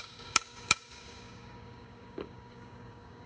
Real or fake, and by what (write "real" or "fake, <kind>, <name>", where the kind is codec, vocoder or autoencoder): fake, codec, DAC